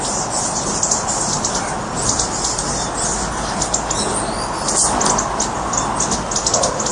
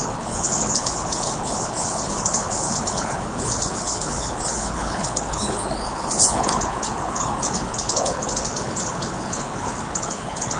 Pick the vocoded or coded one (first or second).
second